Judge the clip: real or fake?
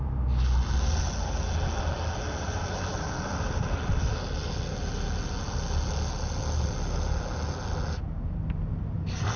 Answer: real